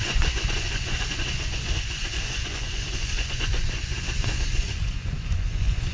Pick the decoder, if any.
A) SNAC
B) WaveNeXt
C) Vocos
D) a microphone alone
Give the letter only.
C